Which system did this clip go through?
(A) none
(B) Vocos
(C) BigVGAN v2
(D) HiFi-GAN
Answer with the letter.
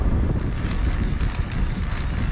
A